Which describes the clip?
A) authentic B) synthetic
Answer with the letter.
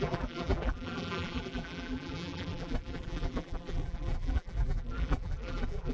B